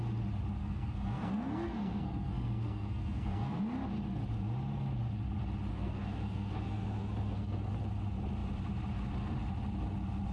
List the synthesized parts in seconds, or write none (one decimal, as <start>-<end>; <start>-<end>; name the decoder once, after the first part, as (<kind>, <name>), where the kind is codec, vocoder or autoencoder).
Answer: 0.6-3.6 (codec, SNAC); 5.7-7.7